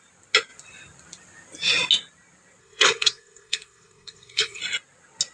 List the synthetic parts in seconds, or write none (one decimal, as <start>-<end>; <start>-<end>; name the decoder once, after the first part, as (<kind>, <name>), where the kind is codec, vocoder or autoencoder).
2.6-4.6 (codec, SNAC)